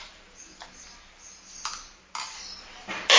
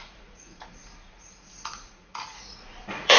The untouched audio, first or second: first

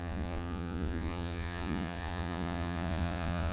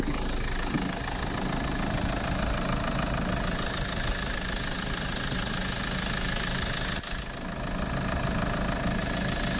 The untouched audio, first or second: second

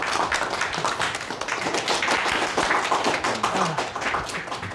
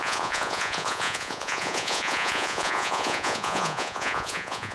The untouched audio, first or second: first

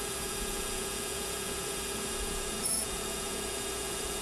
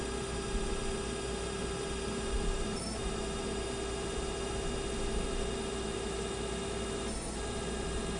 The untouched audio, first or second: second